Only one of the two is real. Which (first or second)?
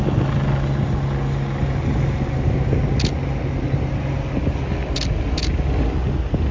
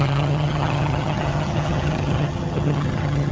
first